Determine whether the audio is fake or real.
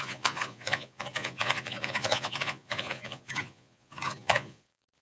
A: fake